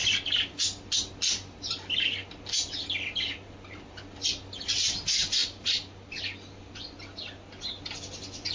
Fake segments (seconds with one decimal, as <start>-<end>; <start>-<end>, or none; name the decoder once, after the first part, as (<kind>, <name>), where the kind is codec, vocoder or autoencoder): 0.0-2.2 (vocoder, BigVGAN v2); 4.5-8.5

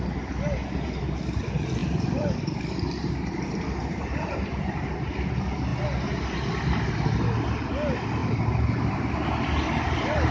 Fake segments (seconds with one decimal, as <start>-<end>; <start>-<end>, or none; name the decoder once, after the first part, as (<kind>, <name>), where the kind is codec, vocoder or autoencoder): 1.8-5.0 (vocoder, BigVGAN v2); 8.2-8.9

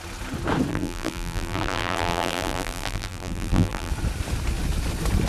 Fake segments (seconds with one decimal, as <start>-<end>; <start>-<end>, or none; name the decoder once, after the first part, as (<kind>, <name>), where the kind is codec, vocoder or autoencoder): 0.7-3.9 (vocoder, BigVGAN v2)